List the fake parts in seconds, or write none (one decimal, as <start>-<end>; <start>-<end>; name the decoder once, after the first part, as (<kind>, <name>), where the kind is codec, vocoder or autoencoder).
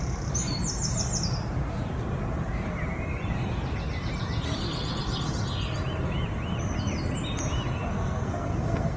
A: 7.9-9.0 (codec, SNAC)